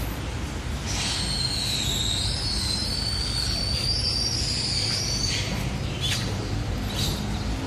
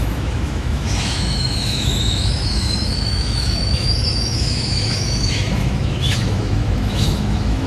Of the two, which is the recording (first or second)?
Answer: first